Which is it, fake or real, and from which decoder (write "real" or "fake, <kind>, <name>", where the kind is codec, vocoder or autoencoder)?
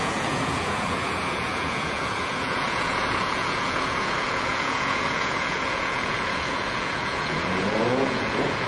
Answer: fake, vocoder, Vocos